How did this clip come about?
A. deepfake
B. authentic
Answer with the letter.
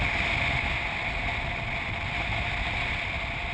B